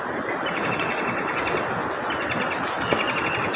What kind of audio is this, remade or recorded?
recorded